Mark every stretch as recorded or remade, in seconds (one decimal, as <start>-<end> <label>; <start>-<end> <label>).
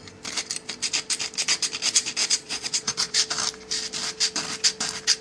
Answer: 0.0-2.2 recorded; 2.2-3.2 remade; 3.2-5.2 recorded